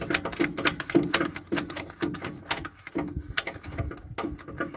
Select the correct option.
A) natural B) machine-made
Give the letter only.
A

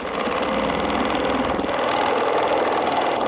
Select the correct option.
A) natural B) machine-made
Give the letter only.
A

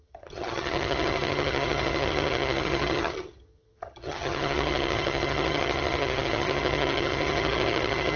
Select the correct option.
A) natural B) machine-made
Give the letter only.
B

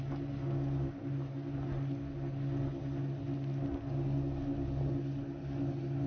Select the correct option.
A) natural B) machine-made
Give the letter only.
A